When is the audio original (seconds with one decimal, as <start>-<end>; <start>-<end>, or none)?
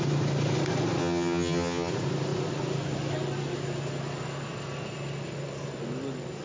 0.0-1.0; 1.9-6.4